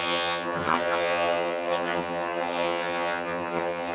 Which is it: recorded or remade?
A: remade